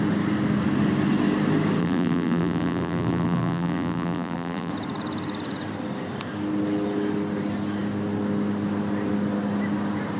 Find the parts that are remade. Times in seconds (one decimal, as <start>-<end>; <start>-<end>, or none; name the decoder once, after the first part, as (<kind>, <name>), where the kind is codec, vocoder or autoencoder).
1.8-4.7 (vocoder, BigVGAN v2)